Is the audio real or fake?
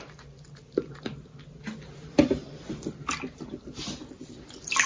real